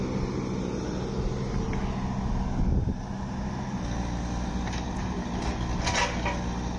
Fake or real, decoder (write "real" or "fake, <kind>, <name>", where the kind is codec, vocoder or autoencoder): real